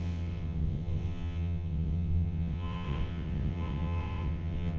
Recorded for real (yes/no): no